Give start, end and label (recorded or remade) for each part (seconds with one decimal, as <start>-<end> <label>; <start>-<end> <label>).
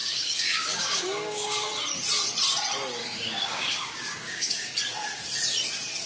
0.0-1.7 remade; 1.7-3.0 recorded; 3.0-4.7 remade; 4.7-6.1 recorded